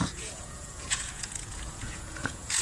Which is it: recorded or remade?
remade